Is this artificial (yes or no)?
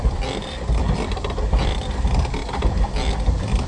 no